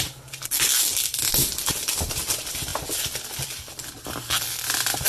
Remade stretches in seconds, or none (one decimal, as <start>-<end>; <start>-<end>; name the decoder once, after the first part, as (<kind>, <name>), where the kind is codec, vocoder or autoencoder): none